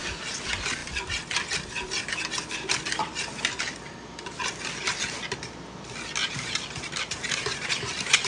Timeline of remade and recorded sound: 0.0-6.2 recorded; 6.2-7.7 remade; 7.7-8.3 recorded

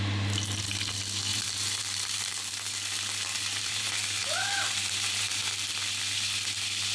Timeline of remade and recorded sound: 0.0-1.3 recorded; 1.3-5.4 remade; 5.4-6.9 recorded

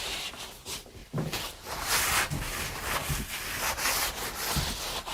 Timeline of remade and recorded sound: 0.0-5.1 recorded

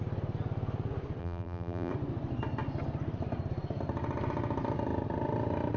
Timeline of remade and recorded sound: 0.0-1.2 recorded; 1.2-1.9 remade; 1.9-5.8 recorded

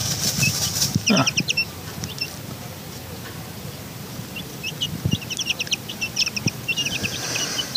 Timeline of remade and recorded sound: 0.0-0.5 recorded; 0.5-7.8 remade

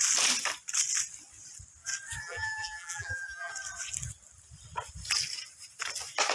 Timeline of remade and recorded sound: 0.0-2.2 recorded; 2.2-3.5 remade; 3.5-6.3 recorded

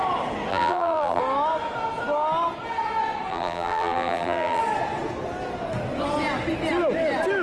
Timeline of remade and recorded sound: 0.0-0.5 recorded; 0.5-1.2 remade; 1.2-3.3 recorded; 3.3-4.6 remade; 4.6-7.4 recorded